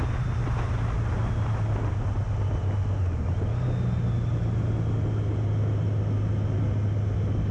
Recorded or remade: recorded